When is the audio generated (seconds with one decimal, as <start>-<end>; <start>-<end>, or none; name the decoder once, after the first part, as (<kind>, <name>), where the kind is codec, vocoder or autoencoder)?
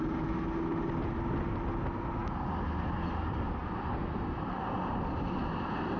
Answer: none